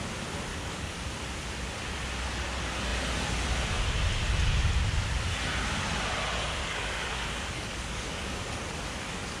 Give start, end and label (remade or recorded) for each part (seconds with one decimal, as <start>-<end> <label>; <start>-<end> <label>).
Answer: 0.0-0.5 recorded; 0.5-1.1 remade; 1.1-6.6 recorded; 6.6-9.4 remade